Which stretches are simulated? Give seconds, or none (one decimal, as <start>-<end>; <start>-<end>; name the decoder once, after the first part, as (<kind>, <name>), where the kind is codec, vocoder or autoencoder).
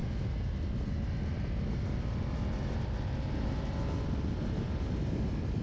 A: none